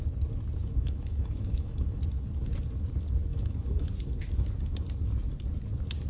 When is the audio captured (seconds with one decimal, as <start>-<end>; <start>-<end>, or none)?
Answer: 0.0-0.6; 2.0-3.3; 4.1-6.1